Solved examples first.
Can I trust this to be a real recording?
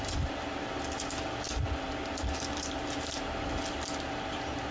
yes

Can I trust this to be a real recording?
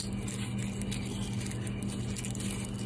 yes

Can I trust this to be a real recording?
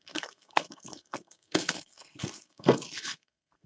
no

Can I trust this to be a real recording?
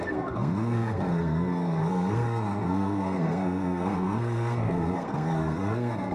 no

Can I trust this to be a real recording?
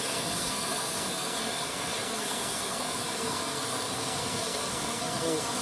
no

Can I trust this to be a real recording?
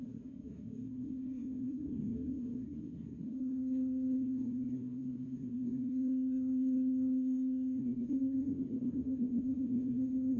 no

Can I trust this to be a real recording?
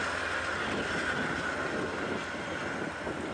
yes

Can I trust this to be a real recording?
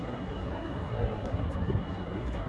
no